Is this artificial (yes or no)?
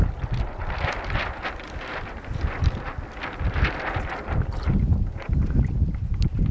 no